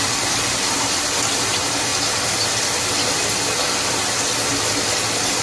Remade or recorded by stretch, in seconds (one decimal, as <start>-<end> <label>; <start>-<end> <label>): 0.0-1.9 remade; 1.9-5.4 recorded